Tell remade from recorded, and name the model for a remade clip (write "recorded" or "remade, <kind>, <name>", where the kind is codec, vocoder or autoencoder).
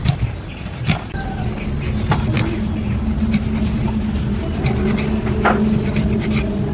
recorded